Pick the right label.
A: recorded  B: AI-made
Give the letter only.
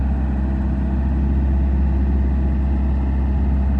A